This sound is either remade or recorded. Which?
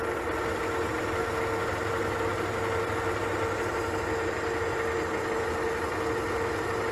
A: recorded